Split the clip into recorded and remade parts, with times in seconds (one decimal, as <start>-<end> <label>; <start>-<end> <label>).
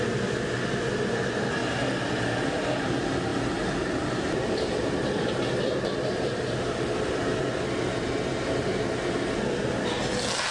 0.0-3.3 recorded; 3.3-5.6 remade; 5.6-10.5 recorded